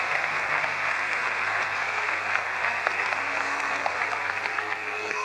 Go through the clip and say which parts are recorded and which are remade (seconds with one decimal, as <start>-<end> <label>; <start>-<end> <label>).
0.0-5.2 remade